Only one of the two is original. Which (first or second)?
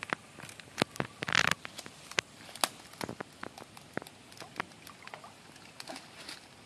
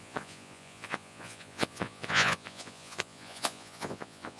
first